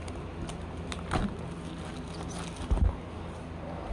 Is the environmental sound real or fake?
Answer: real